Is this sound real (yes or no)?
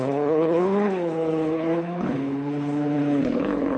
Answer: no